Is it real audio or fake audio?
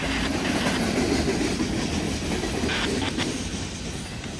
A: real